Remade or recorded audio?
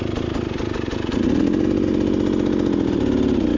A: recorded